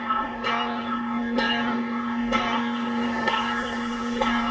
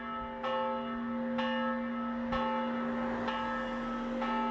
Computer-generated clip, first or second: first